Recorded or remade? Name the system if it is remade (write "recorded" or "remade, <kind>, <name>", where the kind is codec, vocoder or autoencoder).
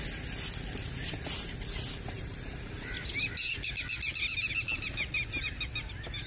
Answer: recorded